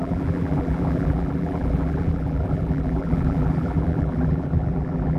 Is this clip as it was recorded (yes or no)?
no